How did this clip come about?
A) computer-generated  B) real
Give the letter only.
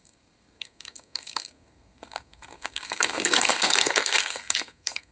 A